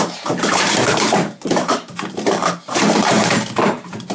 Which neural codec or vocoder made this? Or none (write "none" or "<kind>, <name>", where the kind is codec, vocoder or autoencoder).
vocoder, BigVGAN v2